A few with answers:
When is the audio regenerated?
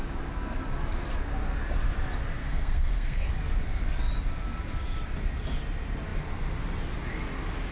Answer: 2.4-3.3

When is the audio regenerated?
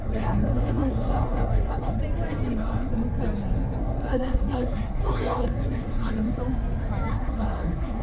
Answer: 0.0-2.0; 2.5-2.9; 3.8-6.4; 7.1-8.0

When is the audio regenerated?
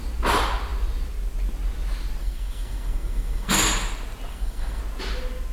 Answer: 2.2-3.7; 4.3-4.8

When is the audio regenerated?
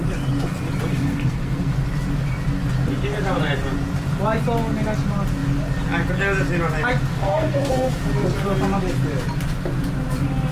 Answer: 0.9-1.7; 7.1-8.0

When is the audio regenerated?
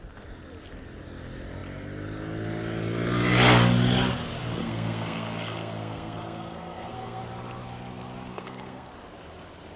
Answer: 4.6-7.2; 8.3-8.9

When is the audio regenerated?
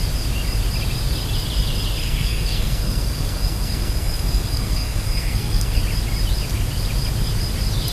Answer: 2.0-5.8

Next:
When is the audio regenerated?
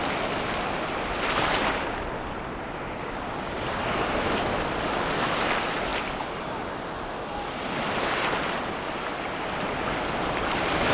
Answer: none